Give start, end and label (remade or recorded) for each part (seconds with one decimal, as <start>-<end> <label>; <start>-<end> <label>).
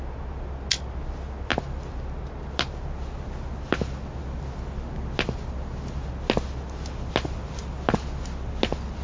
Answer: 0.0-9.0 recorded